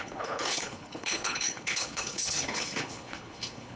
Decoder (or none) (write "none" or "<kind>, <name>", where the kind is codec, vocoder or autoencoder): codec, HILCodec